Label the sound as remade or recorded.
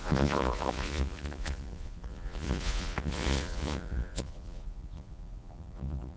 remade